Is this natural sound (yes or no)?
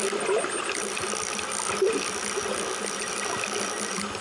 yes